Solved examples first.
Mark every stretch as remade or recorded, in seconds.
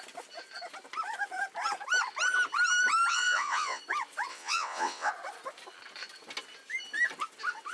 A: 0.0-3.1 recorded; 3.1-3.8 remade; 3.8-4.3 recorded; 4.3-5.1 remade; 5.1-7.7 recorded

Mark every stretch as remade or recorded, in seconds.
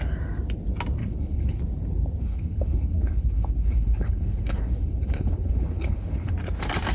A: 0.0-1.0 recorded; 1.0-1.6 remade; 1.6-2.2 recorded; 2.2-6.3 remade; 6.3-6.9 recorded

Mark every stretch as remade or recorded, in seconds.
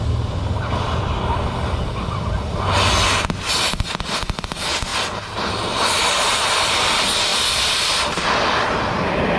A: 0.0-7.3 recorded; 7.3-8.8 remade; 8.8-9.4 recorded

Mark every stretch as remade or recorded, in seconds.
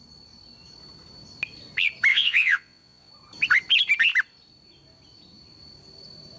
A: 0.0-2.1 recorded; 2.1-3.1 remade; 3.1-6.4 recorded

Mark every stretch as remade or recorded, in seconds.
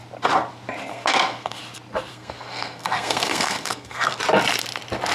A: 0.0-0.9 recorded; 0.9-1.6 remade; 1.6-2.1 recorded; 2.1-4.2 remade; 4.2-5.1 recorded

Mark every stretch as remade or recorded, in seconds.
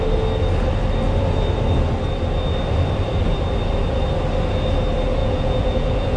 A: 0.0-5.2 recorded; 5.2-6.2 remade